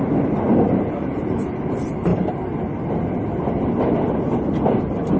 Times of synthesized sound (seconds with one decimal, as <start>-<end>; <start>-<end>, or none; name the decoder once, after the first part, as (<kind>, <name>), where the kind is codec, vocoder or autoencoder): none